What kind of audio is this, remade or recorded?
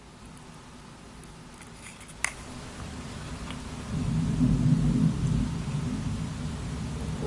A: recorded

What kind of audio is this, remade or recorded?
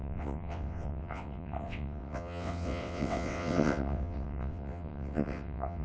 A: remade